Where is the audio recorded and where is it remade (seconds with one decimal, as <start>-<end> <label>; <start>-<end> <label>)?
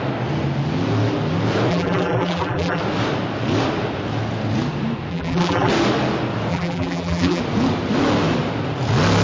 0.0-1.7 recorded; 1.7-2.8 remade; 2.8-5.1 recorded; 5.1-5.7 remade; 5.7-6.5 recorded; 6.5-7.4 remade; 7.4-9.2 recorded